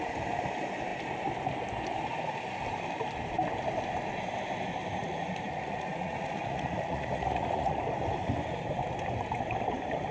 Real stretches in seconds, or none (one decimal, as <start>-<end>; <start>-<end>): 0.0-5.0; 7.8-10.1